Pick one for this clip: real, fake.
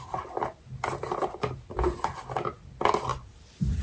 real